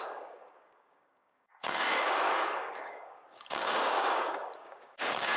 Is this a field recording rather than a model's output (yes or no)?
no